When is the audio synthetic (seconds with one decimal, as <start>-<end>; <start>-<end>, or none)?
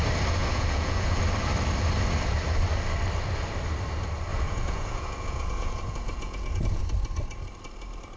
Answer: 0.4-1.2; 4.3-6.8